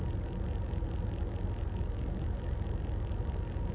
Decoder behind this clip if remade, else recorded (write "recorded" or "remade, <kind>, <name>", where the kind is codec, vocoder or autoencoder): recorded